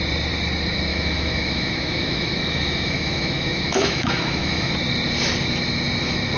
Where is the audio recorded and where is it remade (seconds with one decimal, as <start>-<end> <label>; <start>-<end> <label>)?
0.0-0.9 recorded; 0.9-4.7 remade; 4.7-6.4 recorded